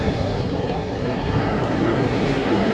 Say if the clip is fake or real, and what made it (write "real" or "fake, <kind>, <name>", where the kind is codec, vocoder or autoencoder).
fake, codec, SNAC